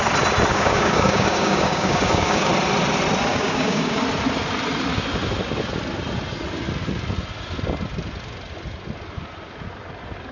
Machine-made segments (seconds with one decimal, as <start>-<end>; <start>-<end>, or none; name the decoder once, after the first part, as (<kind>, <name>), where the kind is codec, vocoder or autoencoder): 0.5-2.5 (codec, DAC); 3.3-4.0